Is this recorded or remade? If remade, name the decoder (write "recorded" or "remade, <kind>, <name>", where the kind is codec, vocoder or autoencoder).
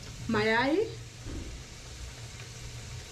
recorded